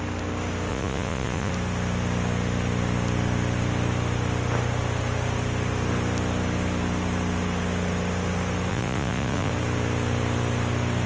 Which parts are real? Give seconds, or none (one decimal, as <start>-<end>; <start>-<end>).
0.0-0.7; 1.5-8.7; 9.5-11.1